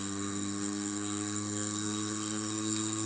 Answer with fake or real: fake